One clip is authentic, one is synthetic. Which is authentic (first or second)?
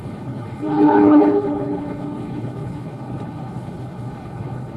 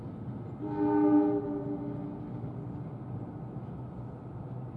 second